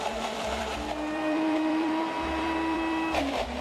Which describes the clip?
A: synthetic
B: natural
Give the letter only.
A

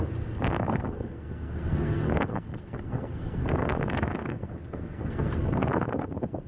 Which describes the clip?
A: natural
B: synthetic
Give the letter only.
B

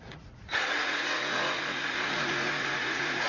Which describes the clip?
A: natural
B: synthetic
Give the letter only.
B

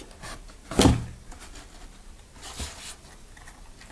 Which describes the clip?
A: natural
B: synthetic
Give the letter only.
A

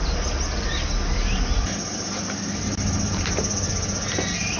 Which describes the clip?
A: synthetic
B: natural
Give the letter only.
B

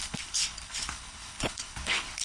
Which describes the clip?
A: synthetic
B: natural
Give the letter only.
A